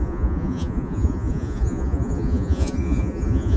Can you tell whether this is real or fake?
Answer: fake